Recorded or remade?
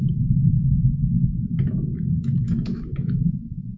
remade